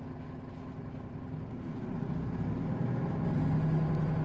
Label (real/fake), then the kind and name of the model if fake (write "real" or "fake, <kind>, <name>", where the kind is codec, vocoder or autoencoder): real